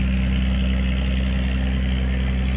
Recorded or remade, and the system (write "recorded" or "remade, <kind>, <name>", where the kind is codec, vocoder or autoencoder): recorded